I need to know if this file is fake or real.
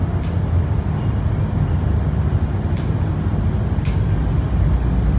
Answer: real